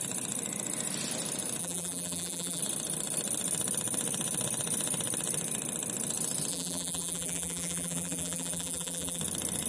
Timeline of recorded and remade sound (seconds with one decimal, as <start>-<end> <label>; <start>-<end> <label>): 0.0-1.6 recorded; 1.6-2.6 remade; 2.6-6.5 recorded; 6.5-9.2 remade; 9.2-9.7 recorded